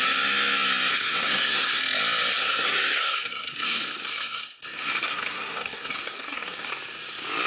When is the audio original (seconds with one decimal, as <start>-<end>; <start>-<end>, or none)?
0.0-0.9; 1.8-2.4; 6.7-7.5